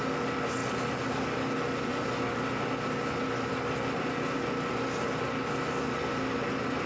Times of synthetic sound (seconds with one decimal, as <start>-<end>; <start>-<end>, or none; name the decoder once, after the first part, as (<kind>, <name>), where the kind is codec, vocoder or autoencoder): none